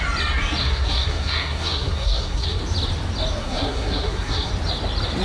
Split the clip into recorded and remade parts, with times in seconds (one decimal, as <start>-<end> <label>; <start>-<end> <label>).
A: 0.0-0.6 recorded; 0.6-2.6 remade; 2.6-3.4 recorded; 3.4-4.5 remade; 4.5-5.2 recorded